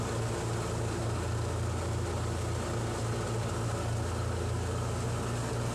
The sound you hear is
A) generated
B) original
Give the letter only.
B